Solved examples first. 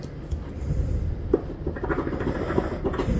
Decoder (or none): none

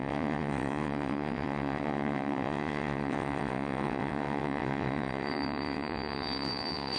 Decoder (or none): vocoder, WaveNeXt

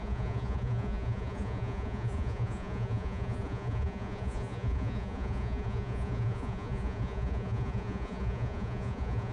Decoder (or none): vocoder, Vocos